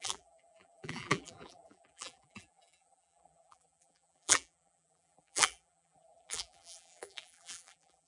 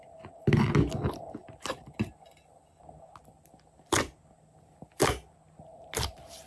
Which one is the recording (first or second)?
second